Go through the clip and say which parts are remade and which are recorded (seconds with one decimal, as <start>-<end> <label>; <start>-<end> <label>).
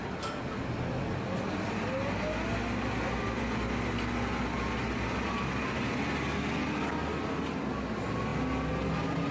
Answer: 0.0-9.3 recorded